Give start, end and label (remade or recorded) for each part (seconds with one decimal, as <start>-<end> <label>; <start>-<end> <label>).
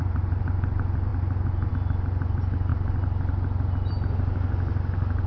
0.0-5.3 recorded